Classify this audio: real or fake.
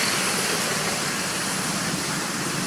real